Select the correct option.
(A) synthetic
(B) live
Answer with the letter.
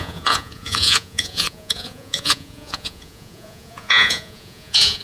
A